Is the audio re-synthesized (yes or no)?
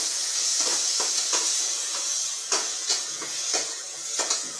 yes